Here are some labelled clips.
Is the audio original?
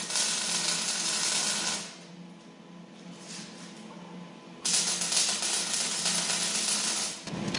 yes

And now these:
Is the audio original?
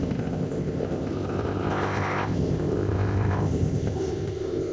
no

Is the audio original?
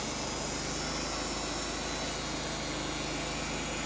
yes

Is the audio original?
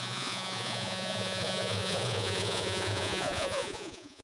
no